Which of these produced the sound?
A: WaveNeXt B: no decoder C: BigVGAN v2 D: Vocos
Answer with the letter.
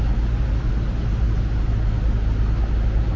B